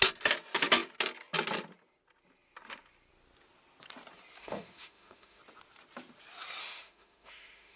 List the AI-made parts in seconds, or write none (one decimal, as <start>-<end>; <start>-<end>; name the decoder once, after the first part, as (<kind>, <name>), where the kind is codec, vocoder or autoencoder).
4.4-5.4 (autoencoder, DAC-VAE); 6.6-7.8